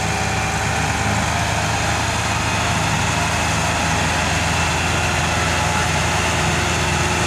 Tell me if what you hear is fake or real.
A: real